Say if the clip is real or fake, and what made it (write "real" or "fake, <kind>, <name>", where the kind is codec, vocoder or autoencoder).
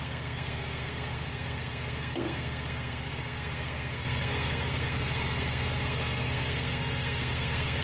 fake, codec, SNAC